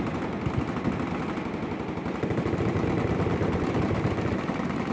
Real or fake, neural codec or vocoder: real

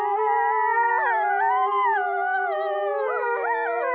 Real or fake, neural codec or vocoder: real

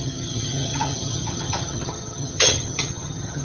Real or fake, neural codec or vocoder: fake, vocoder, HiFi-GAN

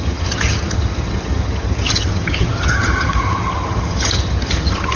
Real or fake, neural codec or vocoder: fake, vocoder, HiFi-GAN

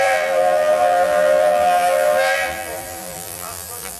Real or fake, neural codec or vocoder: fake, vocoder, BigVGAN v2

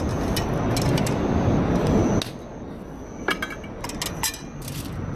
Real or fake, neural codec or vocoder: real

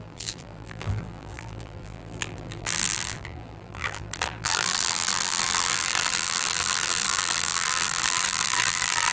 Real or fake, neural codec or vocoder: fake, vocoder, BigVGAN v2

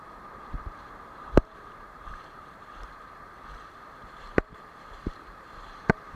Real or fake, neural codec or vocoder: fake, vocoder, BigVGAN v2